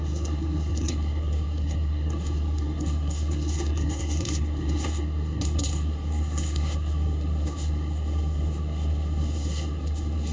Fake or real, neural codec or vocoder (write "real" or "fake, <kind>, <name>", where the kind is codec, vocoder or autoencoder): fake, codec, SNAC